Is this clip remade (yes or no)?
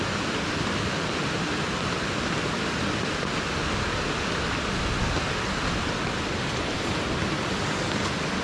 no